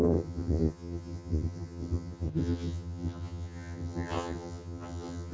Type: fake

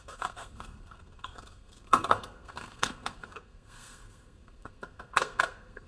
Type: fake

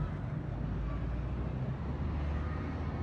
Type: real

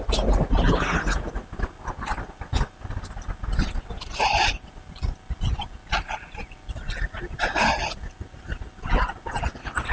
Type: real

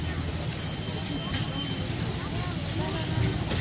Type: real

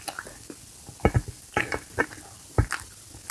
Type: real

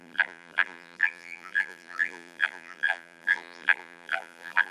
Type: fake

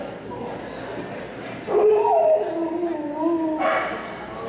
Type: real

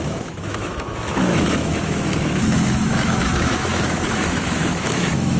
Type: fake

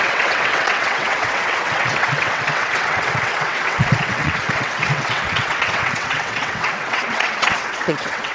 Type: fake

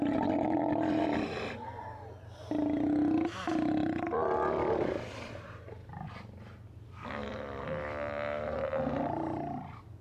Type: real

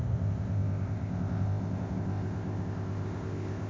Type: fake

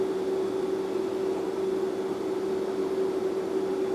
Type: real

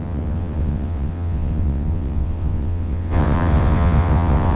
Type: fake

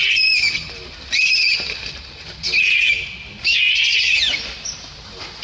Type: real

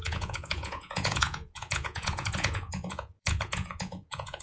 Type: fake